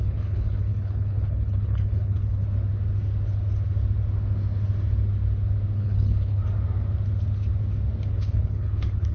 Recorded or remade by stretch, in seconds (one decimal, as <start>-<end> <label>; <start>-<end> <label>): 0.0-2.4 remade; 2.4-5.8 recorded; 5.8-6.4 remade; 6.4-8.1 recorded; 8.1-9.1 remade